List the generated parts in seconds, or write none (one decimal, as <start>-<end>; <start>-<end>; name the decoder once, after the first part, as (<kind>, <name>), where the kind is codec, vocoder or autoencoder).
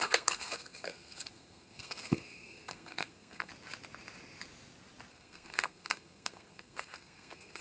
0.0-3.5 (codec, SNAC); 5.1-7.6